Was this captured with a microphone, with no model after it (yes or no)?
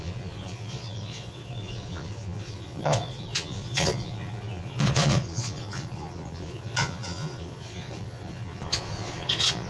no